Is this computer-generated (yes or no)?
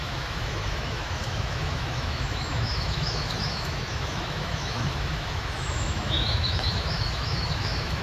yes